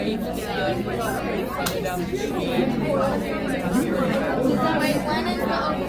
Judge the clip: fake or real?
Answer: real